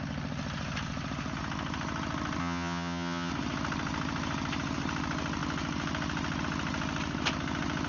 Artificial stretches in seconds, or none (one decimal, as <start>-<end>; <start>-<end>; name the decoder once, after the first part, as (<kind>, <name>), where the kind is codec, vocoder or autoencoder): 2.4-3.3 (vocoder, HiFi-GAN)